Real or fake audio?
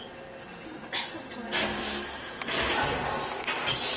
real